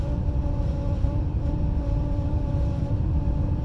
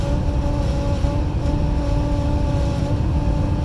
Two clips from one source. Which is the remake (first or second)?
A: first